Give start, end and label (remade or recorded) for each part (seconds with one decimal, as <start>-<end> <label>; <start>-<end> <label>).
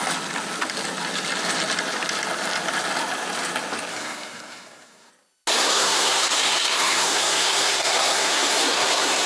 0.0-3.9 recorded; 3.9-5.1 remade; 5.1-5.5 recorded; 5.5-9.3 remade